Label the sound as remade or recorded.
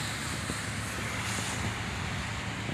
recorded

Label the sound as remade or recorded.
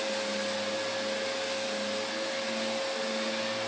recorded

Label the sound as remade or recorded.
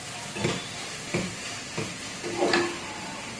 recorded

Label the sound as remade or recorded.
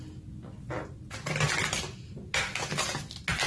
recorded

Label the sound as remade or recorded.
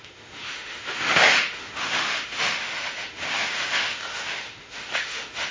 remade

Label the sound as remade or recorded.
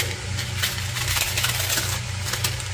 recorded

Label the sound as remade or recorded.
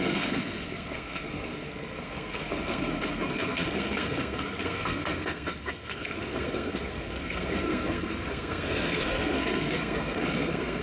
remade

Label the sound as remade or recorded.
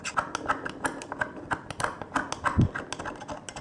recorded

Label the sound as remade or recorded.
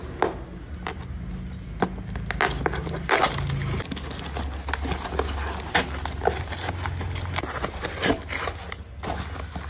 recorded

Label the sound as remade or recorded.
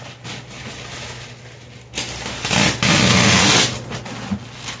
recorded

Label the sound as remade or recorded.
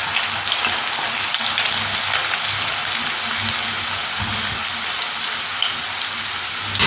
recorded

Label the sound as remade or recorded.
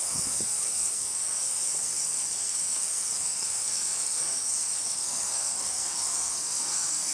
remade